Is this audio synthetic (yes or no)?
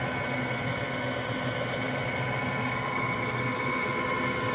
no